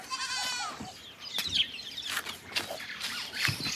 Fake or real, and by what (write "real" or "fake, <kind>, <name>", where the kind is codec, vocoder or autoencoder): real